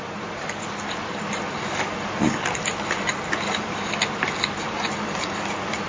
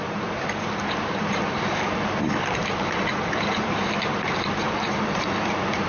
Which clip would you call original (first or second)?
first